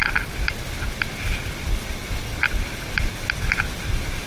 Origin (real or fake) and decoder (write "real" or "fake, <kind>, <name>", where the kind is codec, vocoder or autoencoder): real